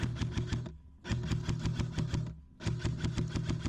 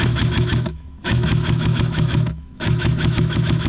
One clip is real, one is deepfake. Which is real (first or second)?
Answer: first